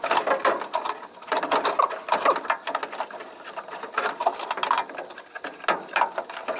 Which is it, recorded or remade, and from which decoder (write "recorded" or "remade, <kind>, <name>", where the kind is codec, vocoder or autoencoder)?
recorded